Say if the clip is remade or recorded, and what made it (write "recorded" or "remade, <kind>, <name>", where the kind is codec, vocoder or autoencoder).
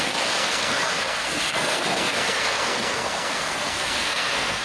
remade, codec, SNAC